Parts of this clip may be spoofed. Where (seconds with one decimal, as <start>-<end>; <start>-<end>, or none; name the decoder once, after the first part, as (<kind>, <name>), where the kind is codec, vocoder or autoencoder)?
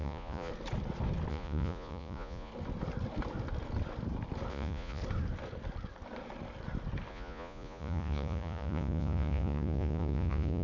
0.0-0.5 (vocoder, Vocos); 1.3-2.5; 4.5-5.0; 7.1-10.6